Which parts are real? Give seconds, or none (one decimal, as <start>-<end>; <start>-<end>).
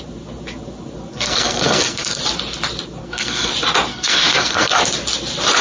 0.0-1.1; 2.2-3.0; 3.5-3.9; 4.8-5.6